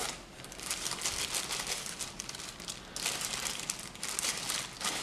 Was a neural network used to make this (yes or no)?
no